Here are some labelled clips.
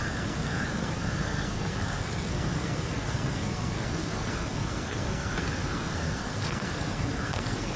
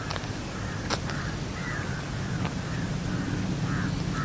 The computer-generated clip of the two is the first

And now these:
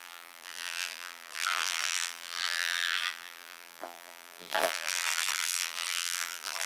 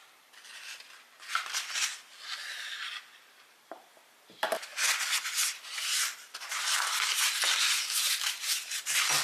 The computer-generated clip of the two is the first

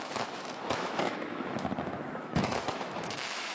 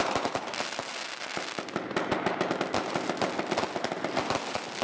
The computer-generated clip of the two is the first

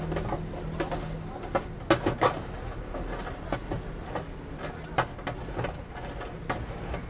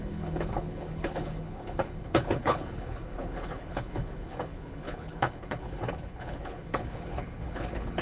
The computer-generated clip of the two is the second